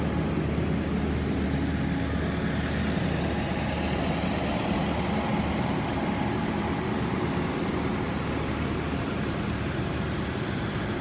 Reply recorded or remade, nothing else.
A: recorded